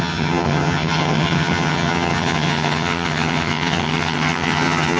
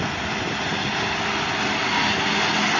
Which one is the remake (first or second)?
first